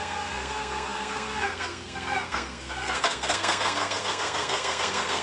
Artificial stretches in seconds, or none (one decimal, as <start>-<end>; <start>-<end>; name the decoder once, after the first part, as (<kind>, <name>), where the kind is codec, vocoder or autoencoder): 0.0-5.2 (codec, SNAC)